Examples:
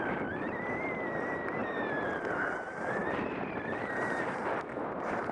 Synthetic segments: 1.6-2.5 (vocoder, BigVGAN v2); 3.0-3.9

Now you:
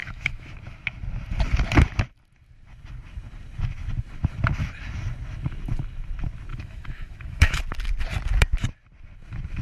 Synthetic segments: 0.0-0.5 (autoencoder, DAC-VAE); 6.5-7.6